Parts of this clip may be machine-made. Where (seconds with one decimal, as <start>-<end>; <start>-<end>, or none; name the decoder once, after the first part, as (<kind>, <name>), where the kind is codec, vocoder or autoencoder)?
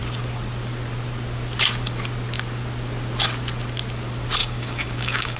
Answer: 4.4-5.4 (codec, DAC)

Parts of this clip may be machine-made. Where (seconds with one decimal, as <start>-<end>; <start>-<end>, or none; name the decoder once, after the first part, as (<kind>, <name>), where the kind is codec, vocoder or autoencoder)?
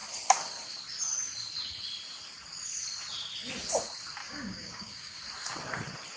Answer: 4.2-5.2 (codec, DAC)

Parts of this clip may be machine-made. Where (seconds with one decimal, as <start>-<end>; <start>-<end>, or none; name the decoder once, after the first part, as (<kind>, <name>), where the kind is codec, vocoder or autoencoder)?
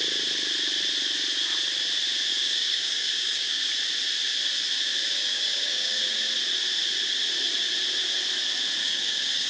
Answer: 2.3-3.6 (codec, DAC); 5.3-6.0; 8.8-9.5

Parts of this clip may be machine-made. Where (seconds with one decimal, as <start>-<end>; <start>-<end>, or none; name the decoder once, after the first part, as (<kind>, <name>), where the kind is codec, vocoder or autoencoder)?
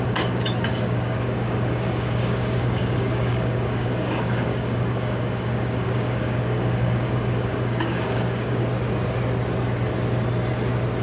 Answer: 0.0-8.7 (codec, DAC)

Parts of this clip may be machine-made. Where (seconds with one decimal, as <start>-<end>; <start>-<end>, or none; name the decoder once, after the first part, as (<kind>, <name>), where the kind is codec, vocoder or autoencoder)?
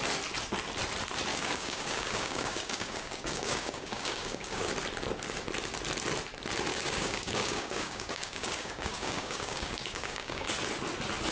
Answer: 1.3-4.7 (codec, DAC); 6.7-10.5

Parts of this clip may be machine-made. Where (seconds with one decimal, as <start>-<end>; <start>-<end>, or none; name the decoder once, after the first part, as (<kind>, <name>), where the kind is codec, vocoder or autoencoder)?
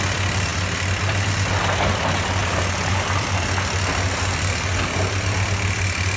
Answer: none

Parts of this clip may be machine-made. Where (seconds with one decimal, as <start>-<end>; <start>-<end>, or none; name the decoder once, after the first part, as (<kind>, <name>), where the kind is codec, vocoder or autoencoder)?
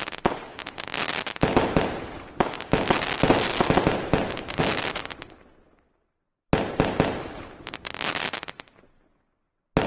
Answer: none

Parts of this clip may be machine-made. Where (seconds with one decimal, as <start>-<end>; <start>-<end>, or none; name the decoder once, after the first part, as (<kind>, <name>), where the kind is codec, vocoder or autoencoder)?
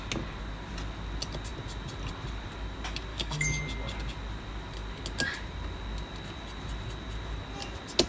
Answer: 3.1-3.6 (codec, DAC)